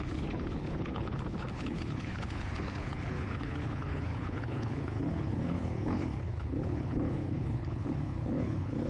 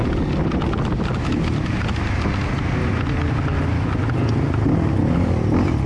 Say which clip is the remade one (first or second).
first